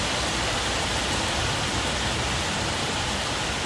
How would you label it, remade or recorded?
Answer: recorded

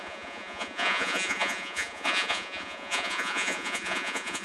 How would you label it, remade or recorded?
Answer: remade